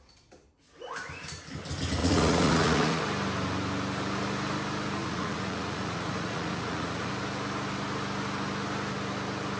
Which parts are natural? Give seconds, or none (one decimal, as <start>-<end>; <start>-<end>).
0.0-2.0; 3.0-5.0; 7.1-9.6